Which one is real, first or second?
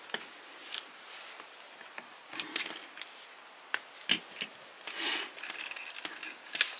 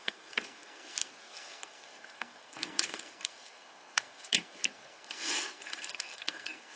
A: first